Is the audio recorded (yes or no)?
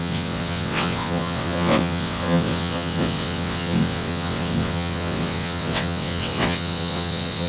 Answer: no